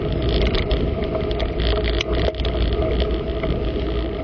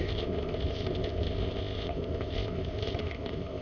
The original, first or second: first